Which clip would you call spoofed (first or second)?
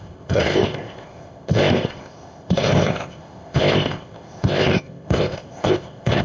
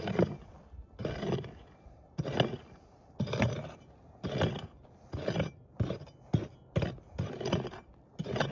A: first